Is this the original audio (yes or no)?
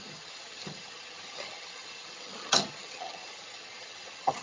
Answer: no